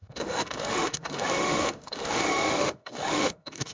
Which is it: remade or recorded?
remade